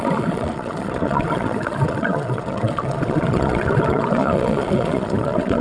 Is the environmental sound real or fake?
fake